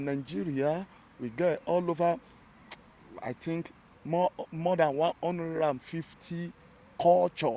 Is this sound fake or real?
real